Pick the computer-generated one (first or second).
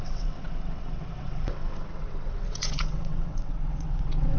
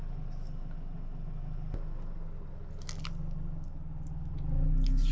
first